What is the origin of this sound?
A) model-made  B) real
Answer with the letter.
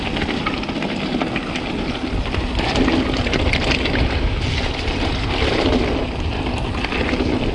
B